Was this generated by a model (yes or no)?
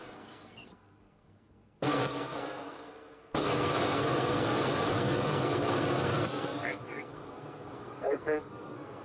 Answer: yes